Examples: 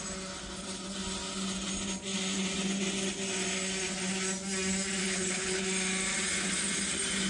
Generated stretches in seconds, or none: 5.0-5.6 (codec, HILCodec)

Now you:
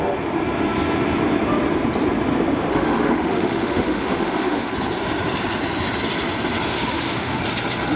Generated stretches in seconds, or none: 2.7-4.7 (autoencoder, DAC-VAE); 6.7-7.4

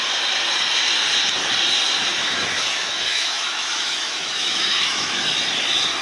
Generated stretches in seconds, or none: 2.1-5.2 (autoencoder, DAC-VAE)

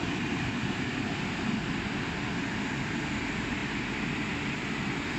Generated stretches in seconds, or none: none

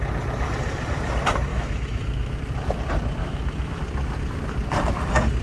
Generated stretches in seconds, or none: 1.5-2.4 (autoencoder, DAC-VAE); 3.2-3.8

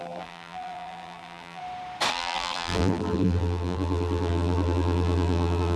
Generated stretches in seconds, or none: 0.0-1.6 (vocoder, BigVGAN v2); 2.1-5.8

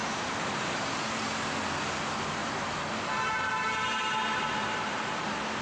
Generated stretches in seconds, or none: 0.0-1.2 (vocoder, BigVGAN v2); 2.4-4.9

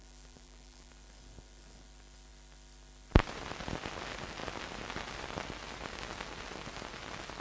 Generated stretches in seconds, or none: 0.0-0.9 (vocoder, BigVGAN v2)